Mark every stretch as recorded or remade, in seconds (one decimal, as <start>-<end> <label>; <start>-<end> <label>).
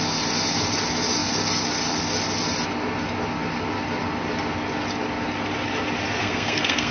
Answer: 0.0-6.2 recorded; 6.2-6.9 remade